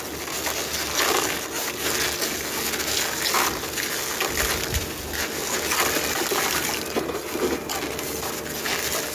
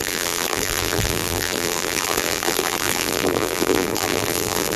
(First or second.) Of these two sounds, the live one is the first